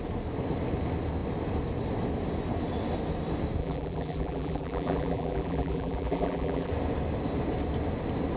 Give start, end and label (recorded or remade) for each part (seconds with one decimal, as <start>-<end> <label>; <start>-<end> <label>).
0.0-3.6 recorded; 3.6-6.7 remade; 6.7-8.4 recorded